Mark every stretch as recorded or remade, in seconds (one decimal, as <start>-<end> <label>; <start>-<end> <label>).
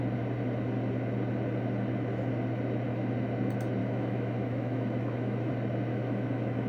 0.0-3.8 recorded; 3.8-5.5 remade; 5.5-5.9 recorded; 5.9-6.7 remade